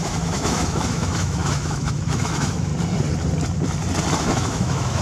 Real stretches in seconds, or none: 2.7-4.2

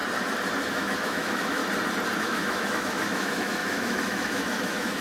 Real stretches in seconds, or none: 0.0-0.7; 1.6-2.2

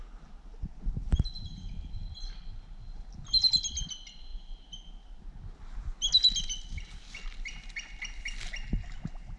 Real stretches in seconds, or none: 0.0-9.4